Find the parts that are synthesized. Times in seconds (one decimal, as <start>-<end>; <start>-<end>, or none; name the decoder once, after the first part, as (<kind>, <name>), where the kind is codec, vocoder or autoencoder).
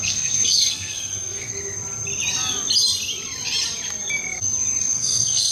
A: 0.0-1.5 (codec, SNAC); 4.8-5.5